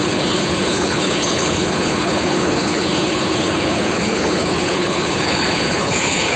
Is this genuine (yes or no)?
no